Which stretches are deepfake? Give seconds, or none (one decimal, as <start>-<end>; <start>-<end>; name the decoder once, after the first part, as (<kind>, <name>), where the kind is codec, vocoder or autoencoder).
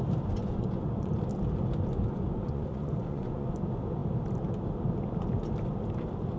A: 0.4-1.1 (vocoder, Vocos); 1.9-3.5